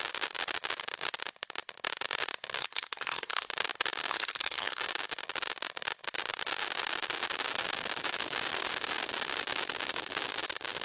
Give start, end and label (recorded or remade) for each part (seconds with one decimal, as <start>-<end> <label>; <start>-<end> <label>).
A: 0.0-2.6 recorded; 2.6-3.5 remade; 3.5-4.1 recorded; 4.1-4.8 remade; 4.8-10.8 recorded